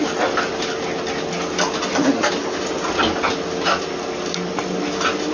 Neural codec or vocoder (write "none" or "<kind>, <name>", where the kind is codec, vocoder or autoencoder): none